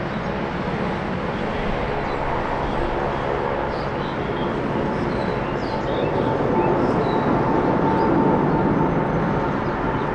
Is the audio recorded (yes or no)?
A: yes